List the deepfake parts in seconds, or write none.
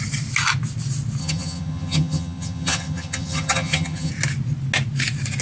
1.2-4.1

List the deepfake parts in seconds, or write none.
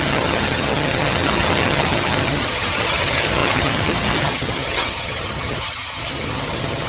0.0-6.9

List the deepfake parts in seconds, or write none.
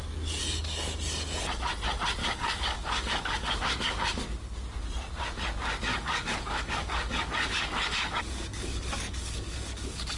2.2-4.2; 5.9-10.2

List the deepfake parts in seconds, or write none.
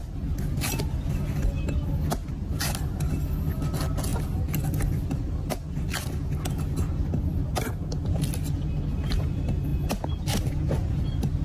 none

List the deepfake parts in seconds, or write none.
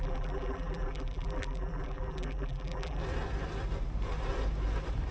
0.0-3.0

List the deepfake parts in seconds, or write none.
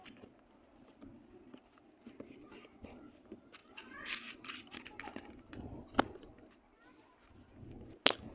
none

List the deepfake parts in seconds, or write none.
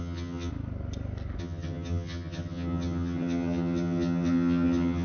0.0-0.5; 1.4-5.0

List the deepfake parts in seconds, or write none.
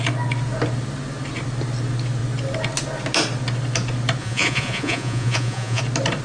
4.2-5.8